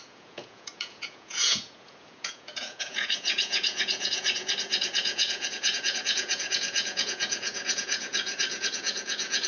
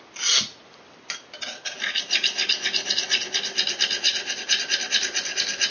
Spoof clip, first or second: first